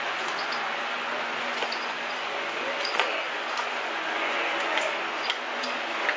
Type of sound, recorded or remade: remade